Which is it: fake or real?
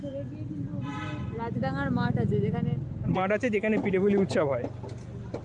real